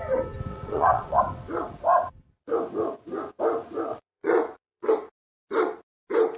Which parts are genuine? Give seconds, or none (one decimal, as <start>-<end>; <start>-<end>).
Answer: 0.0-0.5; 1.2-3.9; 4.9-6.4

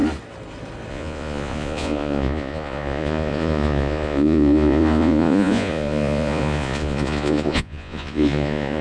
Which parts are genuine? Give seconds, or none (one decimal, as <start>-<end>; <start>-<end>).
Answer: 0.0-0.9

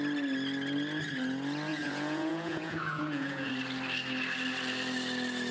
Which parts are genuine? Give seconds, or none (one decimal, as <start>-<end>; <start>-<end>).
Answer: 0.0-1.7; 3.5-5.5

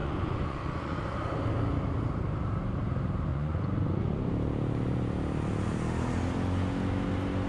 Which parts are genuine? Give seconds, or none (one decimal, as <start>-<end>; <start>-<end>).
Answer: 1.0-3.3; 4.3-7.5

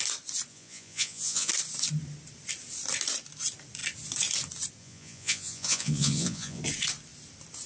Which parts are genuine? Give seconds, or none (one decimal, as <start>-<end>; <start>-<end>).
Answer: 0.0-0.5; 1.5-4.8; 6.6-7.7

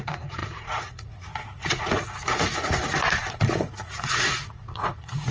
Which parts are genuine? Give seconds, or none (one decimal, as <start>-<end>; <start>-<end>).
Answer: none

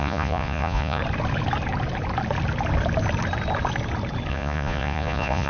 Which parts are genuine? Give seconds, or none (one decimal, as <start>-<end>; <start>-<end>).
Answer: 1.0-4.3

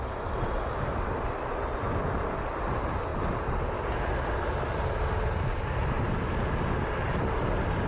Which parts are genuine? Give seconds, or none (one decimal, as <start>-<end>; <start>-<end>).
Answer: 0.0-7.9